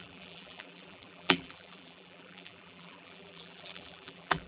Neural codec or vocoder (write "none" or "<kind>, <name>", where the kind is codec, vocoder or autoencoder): vocoder, BigVGAN v2